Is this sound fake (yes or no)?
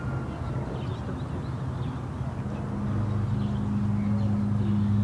no